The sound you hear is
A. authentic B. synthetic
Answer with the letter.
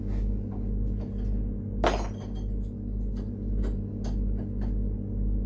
A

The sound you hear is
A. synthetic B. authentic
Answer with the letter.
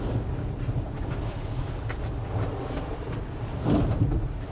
B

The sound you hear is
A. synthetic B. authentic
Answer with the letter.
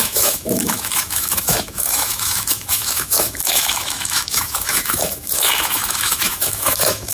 A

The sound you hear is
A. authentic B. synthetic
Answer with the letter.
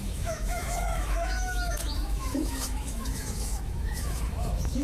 B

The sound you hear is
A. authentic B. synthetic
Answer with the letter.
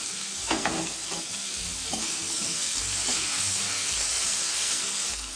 B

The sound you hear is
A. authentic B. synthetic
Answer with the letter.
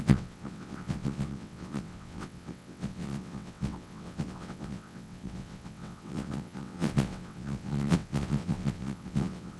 B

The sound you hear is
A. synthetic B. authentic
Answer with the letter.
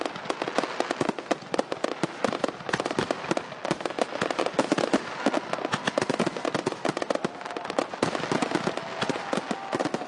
B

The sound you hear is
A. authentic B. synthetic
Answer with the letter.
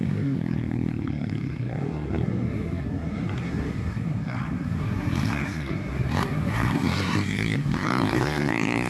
B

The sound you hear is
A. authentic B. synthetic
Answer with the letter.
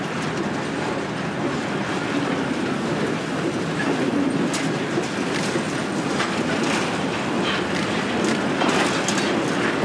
A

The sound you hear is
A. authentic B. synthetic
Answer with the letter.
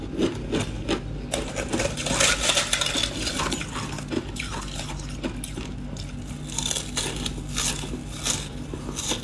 A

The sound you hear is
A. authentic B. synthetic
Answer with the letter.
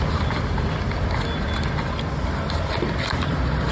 A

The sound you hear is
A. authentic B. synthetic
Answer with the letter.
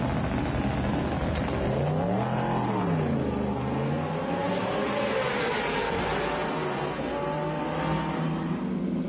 A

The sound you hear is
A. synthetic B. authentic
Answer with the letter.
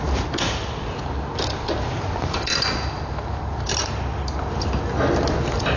B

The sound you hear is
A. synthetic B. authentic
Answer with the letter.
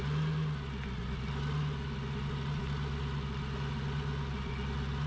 B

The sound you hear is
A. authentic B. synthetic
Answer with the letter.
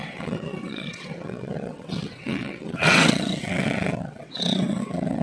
B